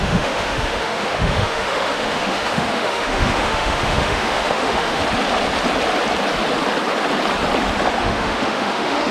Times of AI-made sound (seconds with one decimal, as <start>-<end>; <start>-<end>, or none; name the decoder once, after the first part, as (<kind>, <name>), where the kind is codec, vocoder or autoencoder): 0.0-5.0 (autoencoder, DAC-VAE); 8.0-9.1